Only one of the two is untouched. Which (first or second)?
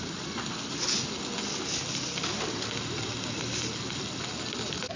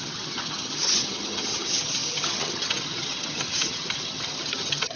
first